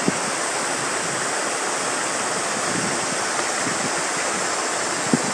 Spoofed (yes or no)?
no